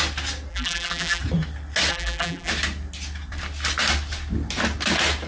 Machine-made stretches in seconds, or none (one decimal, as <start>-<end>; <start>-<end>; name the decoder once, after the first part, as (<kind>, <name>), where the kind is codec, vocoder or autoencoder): 0.5-1.2 (vocoder, BigVGAN v2); 1.9-2.5